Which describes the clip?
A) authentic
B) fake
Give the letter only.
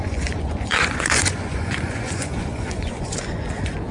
B